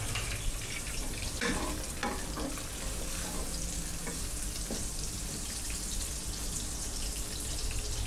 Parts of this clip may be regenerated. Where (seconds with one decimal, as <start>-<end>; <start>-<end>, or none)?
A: 0.0-2.0; 3.0-3.5; 4.7-8.1